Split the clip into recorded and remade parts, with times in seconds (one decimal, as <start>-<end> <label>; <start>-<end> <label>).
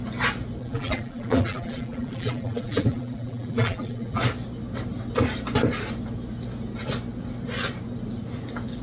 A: 0.0-0.6 recorded; 0.6-4.2 remade; 4.2-8.8 recorded